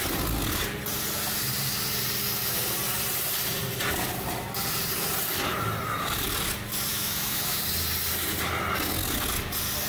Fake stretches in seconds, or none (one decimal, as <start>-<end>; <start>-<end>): 6.9-7.6